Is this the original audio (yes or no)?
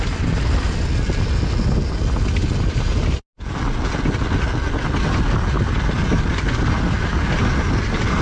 yes